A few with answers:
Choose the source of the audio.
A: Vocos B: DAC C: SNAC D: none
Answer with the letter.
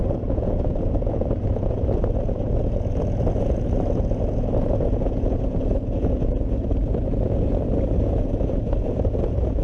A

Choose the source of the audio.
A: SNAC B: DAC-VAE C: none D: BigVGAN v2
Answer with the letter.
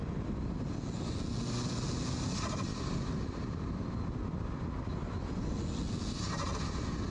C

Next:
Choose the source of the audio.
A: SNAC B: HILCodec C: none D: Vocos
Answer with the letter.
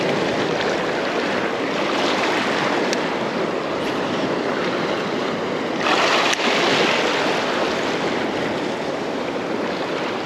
C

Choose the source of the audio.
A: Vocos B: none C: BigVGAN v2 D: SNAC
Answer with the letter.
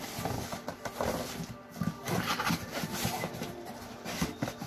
B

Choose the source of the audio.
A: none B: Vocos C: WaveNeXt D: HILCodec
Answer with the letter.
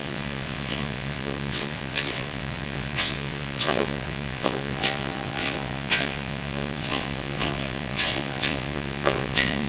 C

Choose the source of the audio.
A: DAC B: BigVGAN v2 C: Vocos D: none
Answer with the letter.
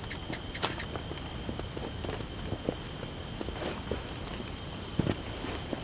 D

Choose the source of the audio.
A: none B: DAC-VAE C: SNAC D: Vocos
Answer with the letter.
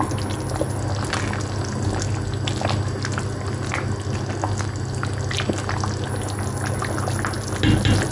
A